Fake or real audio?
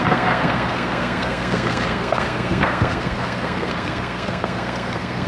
fake